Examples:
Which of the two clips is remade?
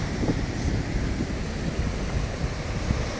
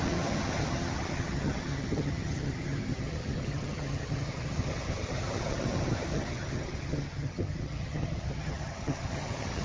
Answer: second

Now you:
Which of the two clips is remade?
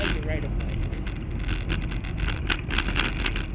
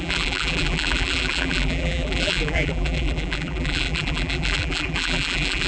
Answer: second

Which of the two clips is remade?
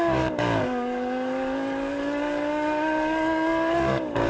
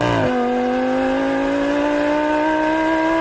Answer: first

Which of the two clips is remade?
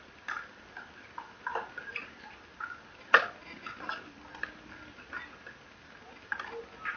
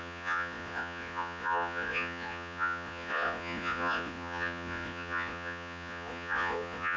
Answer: second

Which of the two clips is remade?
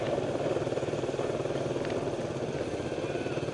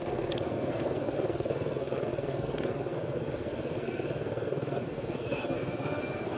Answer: second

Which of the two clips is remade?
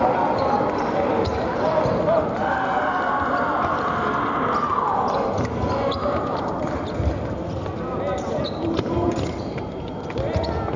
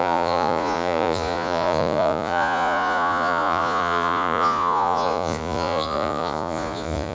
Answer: second